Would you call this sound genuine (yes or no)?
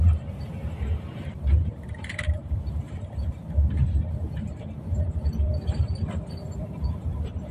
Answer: no